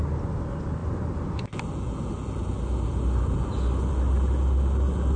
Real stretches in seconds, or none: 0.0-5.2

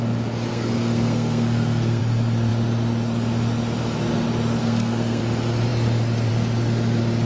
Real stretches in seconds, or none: 0.0-0.5; 2.0-4.6; 5.2-7.3